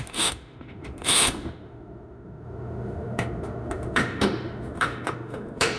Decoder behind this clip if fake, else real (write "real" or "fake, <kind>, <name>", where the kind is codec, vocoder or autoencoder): fake, autoencoder, DAC-VAE